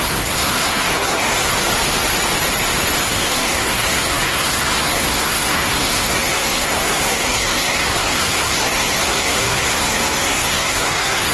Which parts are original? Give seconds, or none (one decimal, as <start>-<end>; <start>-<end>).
1.5-3.0